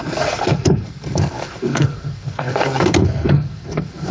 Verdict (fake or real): fake